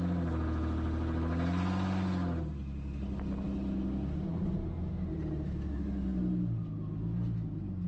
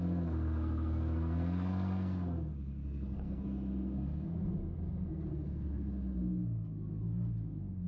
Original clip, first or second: first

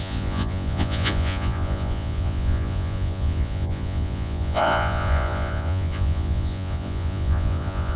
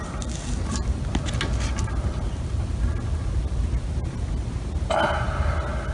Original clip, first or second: second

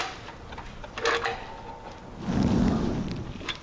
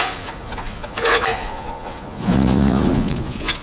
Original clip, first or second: first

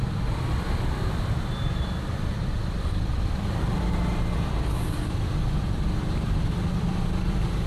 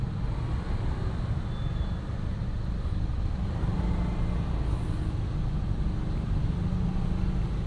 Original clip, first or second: second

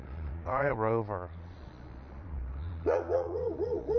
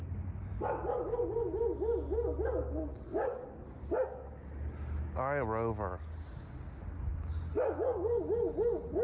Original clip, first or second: second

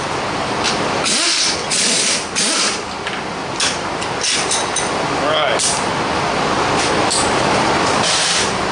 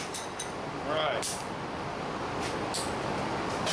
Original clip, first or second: second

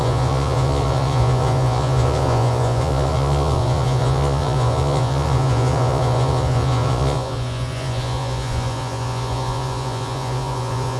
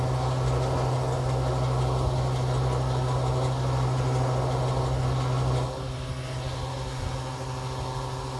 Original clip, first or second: second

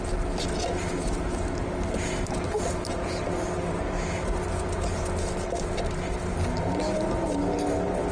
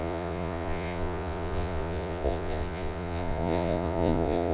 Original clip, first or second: first